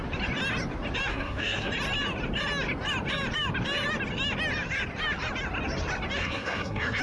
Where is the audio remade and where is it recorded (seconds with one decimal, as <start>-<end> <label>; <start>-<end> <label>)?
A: 0.0-1.1 recorded; 1.1-1.7 remade; 1.7-6.2 recorded; 6.2-7.0 remade